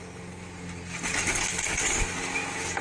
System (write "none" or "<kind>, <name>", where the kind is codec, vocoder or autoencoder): none